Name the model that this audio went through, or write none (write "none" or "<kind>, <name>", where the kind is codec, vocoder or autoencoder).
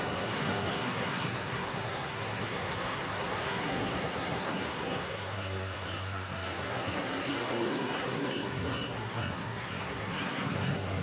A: codec, SNAC